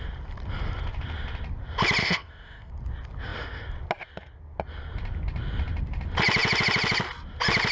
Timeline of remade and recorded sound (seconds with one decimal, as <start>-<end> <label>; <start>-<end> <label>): 0.0-2.0 recorded; 2.0-2.7 remade; 2.7-7.7 recorded